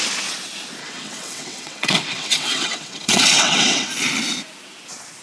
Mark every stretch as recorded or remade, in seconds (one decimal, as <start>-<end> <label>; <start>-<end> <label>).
0.0-0.8 recorded; 0.8-3.9 remade; 3.9-5.2 recorded